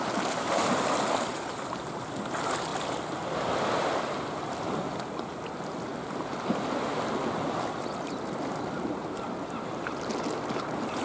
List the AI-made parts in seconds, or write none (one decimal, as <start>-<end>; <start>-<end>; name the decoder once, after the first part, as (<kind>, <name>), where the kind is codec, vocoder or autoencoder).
none